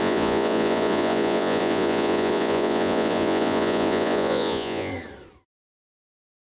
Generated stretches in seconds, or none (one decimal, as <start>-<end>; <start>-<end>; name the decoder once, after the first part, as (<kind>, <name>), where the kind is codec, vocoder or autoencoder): 0.0-4.9 (vocoder, Vocos); 5.5-6.6